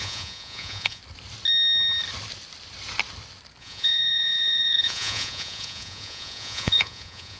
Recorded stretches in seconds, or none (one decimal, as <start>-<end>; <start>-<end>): 1.0-3.6